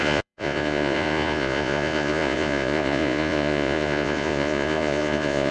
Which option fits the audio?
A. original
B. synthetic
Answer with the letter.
B